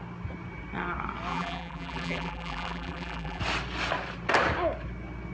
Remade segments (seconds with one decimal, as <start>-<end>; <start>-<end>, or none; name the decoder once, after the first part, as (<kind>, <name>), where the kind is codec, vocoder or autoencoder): 1.3-3.4 (vocoder, BigVGAN v2)